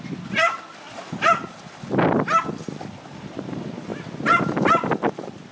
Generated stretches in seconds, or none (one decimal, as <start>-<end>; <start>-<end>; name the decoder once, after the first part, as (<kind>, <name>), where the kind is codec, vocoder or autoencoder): none